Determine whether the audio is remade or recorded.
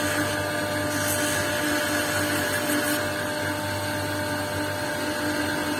recorded